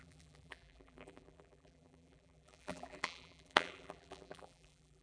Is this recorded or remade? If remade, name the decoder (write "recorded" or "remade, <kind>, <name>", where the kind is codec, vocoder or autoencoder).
remade, vocoder, BigVGAN v2